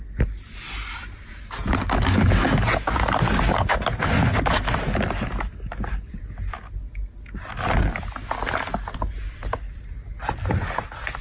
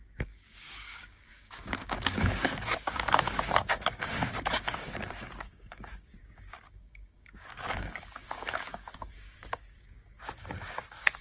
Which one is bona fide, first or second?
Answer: first